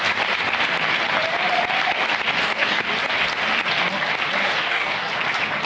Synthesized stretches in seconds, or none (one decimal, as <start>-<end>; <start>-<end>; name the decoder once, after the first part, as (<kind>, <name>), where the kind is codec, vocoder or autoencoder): 2.4-2.9 (codec, DAC); 4.4-5.1

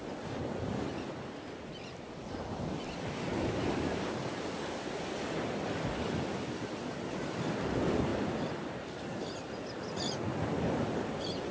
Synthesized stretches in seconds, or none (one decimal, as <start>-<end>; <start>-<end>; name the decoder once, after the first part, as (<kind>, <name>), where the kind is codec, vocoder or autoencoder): none

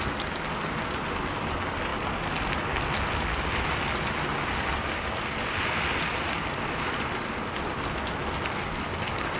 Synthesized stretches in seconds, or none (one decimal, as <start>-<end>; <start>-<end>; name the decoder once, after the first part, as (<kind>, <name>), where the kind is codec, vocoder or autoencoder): none

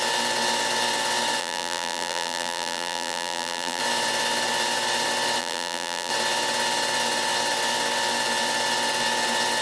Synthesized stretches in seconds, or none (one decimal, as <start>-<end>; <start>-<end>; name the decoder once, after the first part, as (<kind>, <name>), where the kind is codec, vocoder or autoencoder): 1.4-3.8 (vocoder, BigVGAN v2); 5.4-6.1

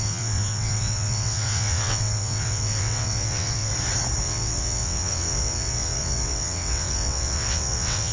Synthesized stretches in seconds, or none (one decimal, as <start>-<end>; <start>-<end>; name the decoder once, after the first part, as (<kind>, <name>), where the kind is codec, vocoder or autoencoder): 0.0-3.7 (vocoder, WaveNeXt); 4.2-8.1